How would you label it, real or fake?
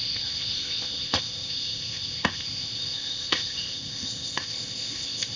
fake